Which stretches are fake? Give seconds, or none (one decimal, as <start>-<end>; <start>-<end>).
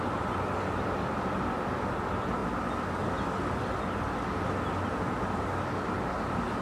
none